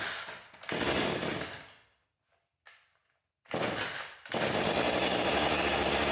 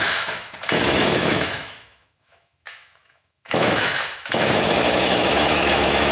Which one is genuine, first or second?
first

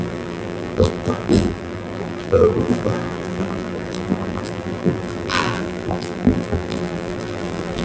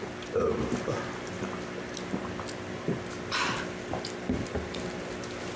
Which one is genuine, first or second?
second